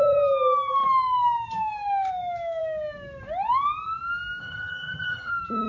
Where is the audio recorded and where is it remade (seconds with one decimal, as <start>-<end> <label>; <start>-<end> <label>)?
0.0-4.4 recorded; 4.4-5.3 remade; 5.3-5.7 recorded